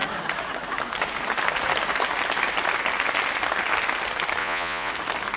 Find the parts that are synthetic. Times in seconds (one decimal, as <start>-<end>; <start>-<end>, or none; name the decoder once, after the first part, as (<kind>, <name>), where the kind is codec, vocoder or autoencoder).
4.4-4.9 (vocoder, Vocos)